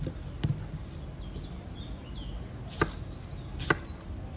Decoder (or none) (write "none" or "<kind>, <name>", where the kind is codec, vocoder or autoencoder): none